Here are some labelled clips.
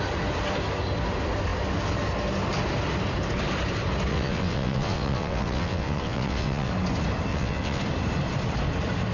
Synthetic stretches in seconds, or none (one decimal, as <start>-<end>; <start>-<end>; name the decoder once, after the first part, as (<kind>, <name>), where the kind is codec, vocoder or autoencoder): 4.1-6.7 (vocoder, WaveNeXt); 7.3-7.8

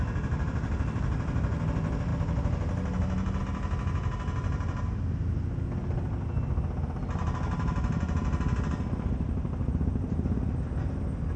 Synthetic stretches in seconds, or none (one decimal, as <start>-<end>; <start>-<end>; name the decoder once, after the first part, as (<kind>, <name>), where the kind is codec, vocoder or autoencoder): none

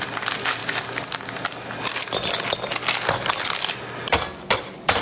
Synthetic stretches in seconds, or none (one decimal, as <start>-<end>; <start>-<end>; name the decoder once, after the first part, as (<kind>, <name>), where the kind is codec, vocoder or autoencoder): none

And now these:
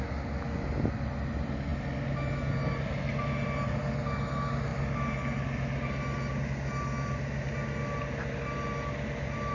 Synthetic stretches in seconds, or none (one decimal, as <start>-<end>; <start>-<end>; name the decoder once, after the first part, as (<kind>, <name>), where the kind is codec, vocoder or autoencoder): none